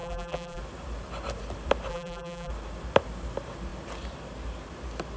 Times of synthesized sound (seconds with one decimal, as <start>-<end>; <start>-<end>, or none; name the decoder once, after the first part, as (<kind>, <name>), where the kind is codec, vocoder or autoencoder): 0.0-0.6 (vocoder, BigVGAN v2); 1.9-2.5